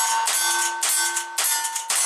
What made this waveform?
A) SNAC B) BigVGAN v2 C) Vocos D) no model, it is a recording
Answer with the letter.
D